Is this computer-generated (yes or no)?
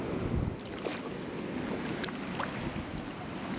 no